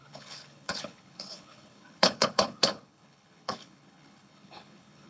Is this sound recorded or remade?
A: remade